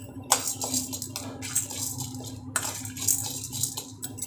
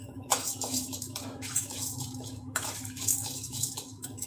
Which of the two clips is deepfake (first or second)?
second